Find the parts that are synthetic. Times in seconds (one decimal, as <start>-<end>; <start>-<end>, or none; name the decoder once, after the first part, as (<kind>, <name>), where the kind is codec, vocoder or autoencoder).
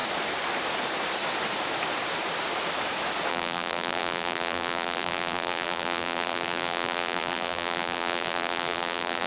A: 3.3-9.3 (vocoder, BigVGAN v2)